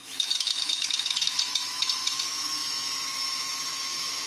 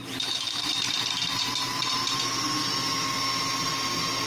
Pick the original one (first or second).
second